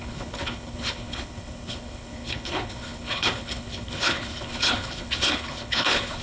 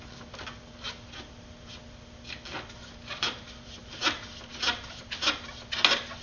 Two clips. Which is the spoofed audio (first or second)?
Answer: first